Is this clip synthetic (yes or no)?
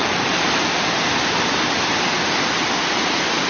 no